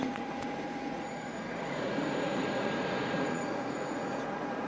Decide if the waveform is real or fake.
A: fake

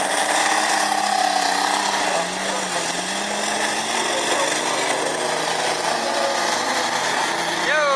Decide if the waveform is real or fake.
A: real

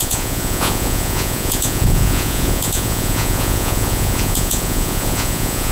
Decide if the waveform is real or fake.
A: fake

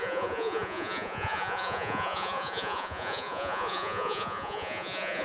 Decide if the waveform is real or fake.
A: fake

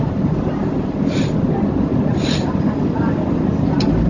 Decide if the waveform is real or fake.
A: real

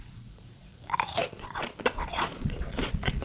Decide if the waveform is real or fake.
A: fake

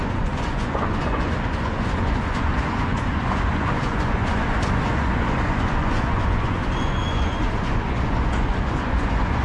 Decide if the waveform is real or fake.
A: fake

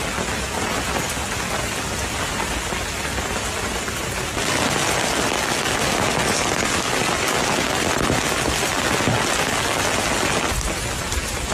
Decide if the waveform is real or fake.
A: real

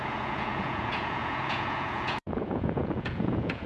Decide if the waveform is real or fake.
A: fake